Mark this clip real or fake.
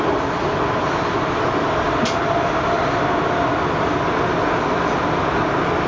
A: real